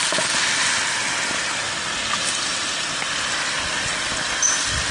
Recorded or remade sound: recorded